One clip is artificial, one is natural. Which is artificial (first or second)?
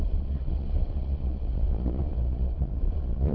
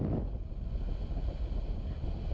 first